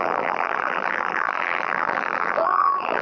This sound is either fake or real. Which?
fake